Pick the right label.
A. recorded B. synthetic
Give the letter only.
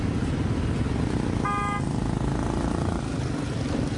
A